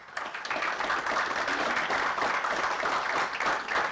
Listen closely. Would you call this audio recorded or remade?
recorded